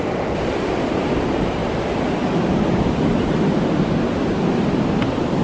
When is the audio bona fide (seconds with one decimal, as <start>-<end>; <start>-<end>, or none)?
0.0-5.4